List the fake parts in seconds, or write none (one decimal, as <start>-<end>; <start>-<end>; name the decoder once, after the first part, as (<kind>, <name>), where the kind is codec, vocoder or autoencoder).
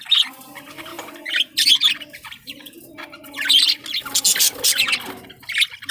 none